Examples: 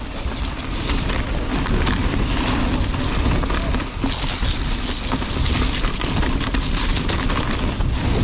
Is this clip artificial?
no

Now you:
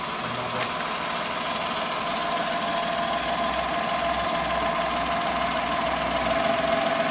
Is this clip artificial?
no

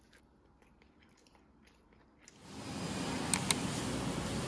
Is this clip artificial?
no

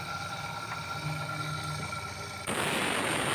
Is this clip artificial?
no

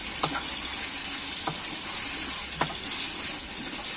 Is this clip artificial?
no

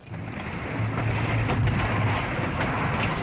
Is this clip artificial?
no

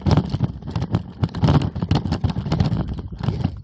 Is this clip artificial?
no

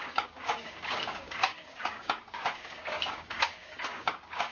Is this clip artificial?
yes